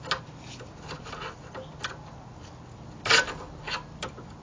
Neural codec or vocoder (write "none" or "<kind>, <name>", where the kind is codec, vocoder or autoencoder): none